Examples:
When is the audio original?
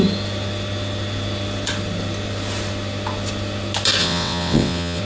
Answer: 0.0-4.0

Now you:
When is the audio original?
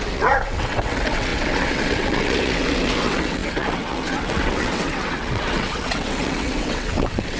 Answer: none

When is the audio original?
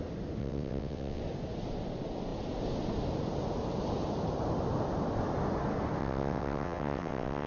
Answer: 0.0-0.4; 1.2-6.0